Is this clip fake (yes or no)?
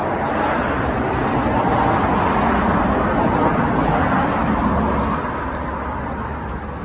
no